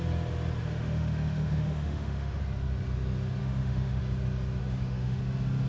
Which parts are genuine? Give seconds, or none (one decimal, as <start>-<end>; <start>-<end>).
0.0-0.6; 2.4-3.4; 4.0-4.6; 5.2-5.7